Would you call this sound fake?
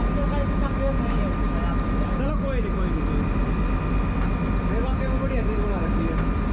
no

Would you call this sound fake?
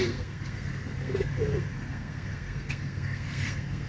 yes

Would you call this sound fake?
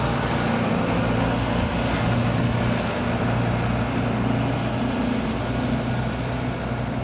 no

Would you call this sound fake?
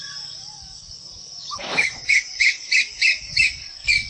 yes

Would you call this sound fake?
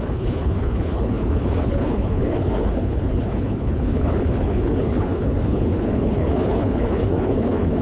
yes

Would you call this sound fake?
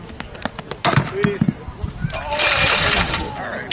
no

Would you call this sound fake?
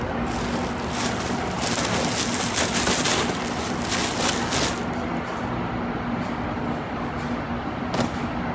no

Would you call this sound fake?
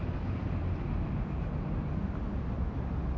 no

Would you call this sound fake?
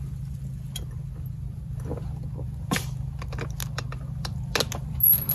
no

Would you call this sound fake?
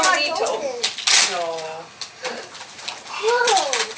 no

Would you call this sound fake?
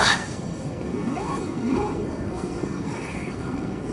yes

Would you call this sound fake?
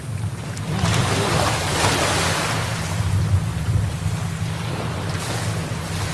no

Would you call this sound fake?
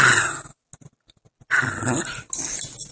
no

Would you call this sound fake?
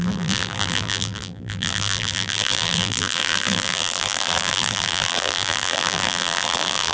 yes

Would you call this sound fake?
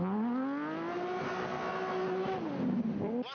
no